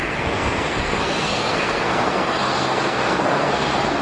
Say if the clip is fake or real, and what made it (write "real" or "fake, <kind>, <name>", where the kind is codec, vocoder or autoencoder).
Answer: fake, codec, SNAC